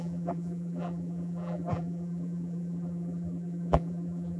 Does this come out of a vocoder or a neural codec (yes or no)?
yes